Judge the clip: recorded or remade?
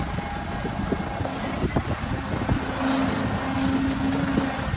recorded